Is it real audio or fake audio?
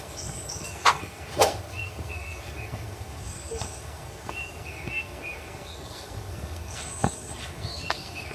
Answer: fake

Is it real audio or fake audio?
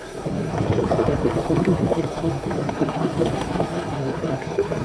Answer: fake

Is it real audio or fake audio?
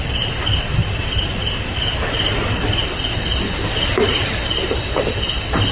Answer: real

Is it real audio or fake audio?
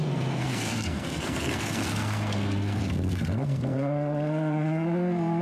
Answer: fake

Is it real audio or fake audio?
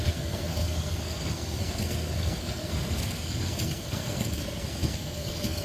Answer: fake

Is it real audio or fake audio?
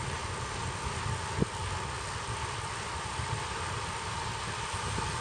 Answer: real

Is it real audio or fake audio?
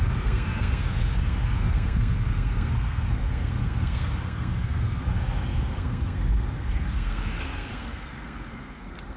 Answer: fake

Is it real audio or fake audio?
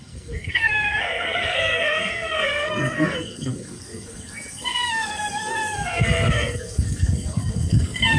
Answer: fake